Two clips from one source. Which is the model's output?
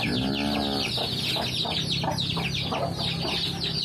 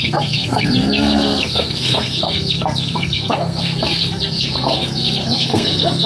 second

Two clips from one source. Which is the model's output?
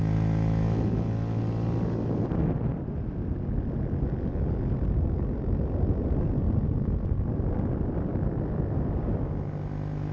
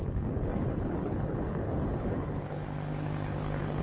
second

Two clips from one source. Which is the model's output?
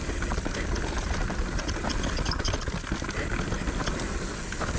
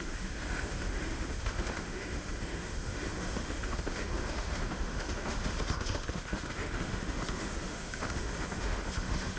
second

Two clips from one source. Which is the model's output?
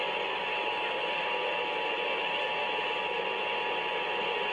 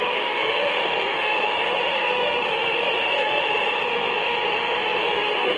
second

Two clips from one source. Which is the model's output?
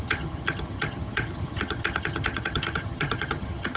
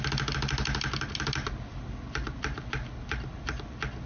first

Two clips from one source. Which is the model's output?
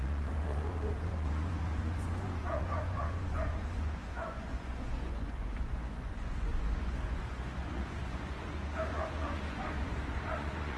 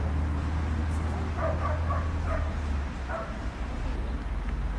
first